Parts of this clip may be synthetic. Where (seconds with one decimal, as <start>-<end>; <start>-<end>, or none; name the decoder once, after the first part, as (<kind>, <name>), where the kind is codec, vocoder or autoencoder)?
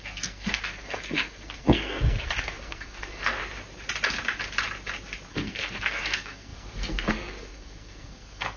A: 0.0-3.4 (codec, SNAC); 5.3-8.6